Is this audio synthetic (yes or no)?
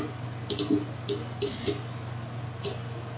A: no